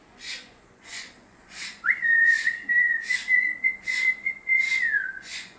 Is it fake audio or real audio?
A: fake